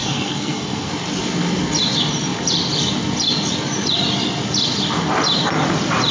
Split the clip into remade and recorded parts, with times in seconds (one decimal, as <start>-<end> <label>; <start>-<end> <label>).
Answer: 0.0-0.9 remade; 0.9-6.1 recorded